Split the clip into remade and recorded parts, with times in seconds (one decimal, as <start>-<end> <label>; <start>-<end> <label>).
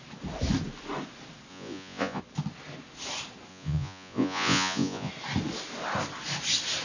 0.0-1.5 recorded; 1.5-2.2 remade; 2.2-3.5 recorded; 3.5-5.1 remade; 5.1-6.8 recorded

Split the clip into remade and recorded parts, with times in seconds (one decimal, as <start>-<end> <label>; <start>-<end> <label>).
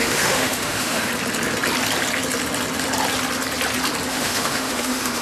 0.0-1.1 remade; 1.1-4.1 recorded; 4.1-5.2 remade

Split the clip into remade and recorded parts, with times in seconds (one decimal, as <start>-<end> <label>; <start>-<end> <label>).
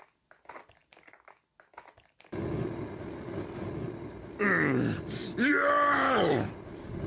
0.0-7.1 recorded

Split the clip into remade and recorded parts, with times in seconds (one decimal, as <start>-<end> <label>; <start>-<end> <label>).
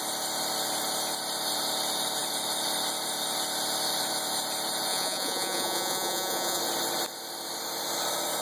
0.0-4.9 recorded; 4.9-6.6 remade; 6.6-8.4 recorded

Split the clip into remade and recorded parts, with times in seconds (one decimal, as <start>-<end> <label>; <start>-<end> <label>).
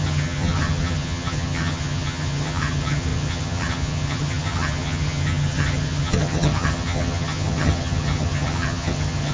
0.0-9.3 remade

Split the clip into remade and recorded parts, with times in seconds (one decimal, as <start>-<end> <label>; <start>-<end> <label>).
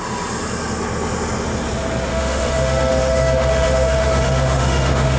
0.0-2.1 recorded; 2.1-5.2 remade